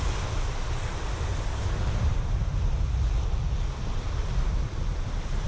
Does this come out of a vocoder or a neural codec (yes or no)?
no